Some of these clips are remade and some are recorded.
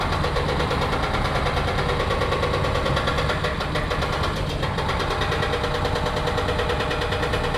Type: recorded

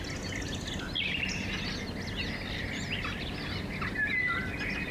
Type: recorded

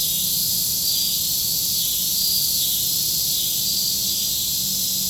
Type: recorded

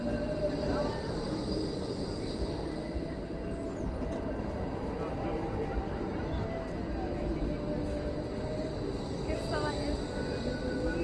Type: recorded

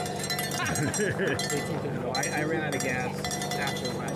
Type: recorded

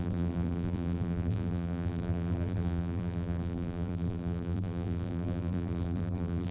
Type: remade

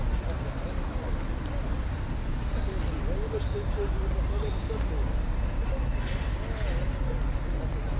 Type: recorded